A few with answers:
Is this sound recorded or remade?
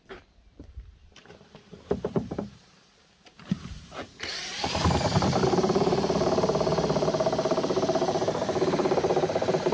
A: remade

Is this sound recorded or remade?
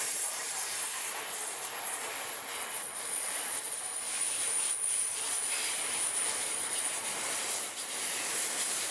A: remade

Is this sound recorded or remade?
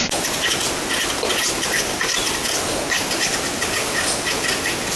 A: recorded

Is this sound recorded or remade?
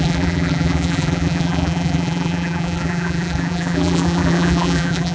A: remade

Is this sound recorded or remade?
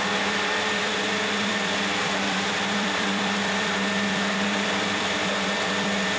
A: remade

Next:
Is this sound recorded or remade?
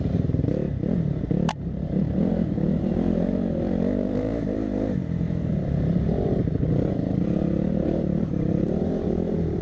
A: remade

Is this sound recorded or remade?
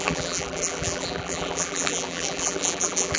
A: remade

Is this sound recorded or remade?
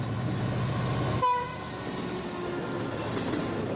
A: recorded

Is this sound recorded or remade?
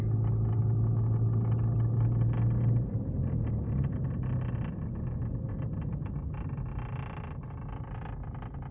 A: recorded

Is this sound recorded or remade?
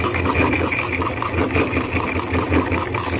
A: recorded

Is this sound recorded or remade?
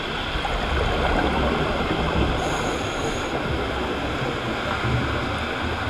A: recorded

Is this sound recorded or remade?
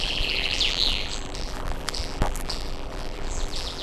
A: remade